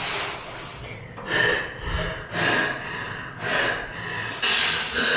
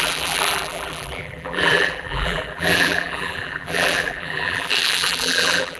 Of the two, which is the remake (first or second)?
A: second